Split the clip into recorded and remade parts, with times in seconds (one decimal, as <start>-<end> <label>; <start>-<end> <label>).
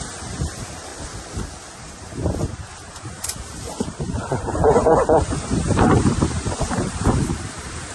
0.0-0.9 remade; 0.9-2.9 recorded; 2.9-7.9 remade